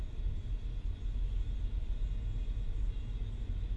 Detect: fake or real real